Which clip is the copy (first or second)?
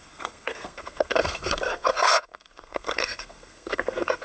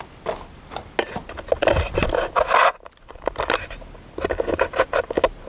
first